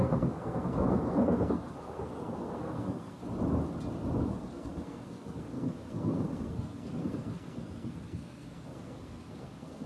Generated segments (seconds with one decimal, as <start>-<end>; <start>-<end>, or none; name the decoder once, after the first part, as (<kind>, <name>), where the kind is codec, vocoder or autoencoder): 0.0-3.2 (codec, SNAC); 4.2-9.9